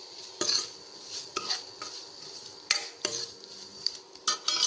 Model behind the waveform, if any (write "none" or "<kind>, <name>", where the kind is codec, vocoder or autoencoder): vocoder, BigVGAN v2